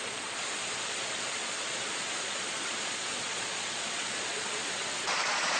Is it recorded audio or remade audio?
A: remade